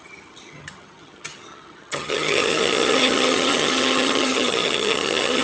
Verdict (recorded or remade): remade